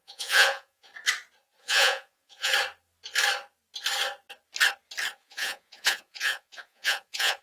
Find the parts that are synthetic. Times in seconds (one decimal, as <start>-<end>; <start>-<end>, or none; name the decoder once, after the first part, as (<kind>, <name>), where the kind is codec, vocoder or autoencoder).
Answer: 0.0-0.9 (vocoder, Vocos); 1.6-2.5; 5.1-7.4